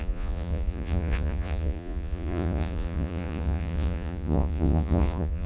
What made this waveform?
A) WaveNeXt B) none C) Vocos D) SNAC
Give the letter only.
C